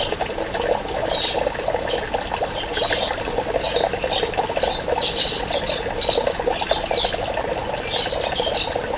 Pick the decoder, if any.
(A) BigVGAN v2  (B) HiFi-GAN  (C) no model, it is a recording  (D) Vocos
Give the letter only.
C